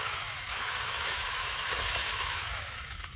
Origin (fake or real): fake